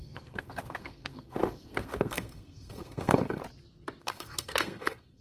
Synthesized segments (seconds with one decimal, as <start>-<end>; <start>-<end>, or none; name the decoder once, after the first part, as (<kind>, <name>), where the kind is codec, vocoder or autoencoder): 0.0-3.4 (codec, SNAC); 4.0-5.2